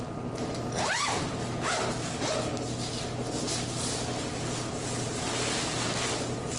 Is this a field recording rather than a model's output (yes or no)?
yes